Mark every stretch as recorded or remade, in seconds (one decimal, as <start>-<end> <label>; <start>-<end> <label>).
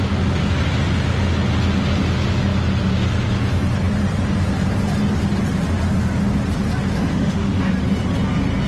0.0-7.0 recorded; 7.0-7.7 remade; 7.7-8.7 recorded